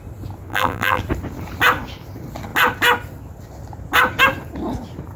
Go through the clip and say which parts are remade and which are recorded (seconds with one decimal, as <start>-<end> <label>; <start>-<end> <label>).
0.0-0.5 recorded; 0.5-1.0 remade; 1.0-5.2 recorded